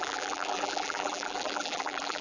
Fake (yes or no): yes